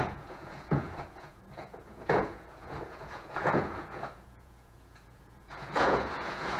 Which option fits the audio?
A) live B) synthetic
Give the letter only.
B